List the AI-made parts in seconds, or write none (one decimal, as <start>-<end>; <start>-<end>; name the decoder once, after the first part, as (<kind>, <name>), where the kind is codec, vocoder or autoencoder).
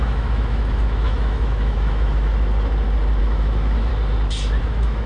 0.0-2.3 (autoencoder, DAC-VAE); 3.2-3.9; 4.6-5.1